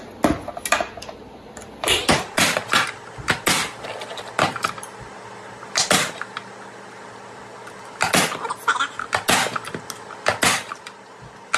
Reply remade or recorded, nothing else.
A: recorded